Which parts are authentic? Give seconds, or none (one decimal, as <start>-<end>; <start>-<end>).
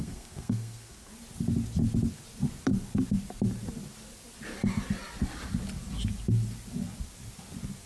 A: 1.1-7.9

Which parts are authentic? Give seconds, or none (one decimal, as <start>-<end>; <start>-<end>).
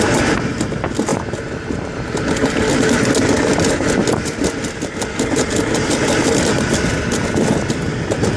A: 0.0-8.4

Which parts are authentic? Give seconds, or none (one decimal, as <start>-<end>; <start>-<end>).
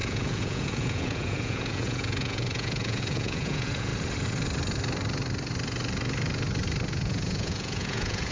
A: 3.9-6.9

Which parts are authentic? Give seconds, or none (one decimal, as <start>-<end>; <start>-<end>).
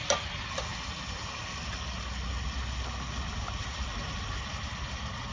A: 0.0-5.3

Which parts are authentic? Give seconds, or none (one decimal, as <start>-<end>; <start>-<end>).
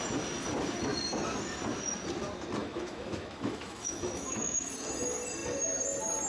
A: 0.0-2.6; 4.7-6.3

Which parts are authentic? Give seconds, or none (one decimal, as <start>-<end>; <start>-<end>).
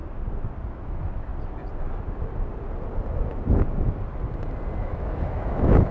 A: 0.0-0.7; 1.3-4.8